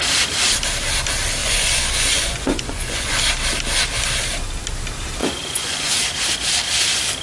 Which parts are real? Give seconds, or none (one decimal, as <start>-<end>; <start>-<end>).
0.0-1.4; 3.2-5.2; 5.9-7.2